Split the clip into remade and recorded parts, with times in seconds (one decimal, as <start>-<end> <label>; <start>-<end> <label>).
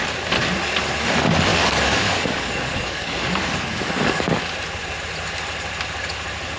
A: 0.0-1.5 recorded; 1.5-4.4 remade; 4.4-6.6 recorded